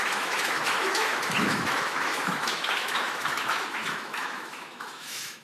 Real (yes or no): no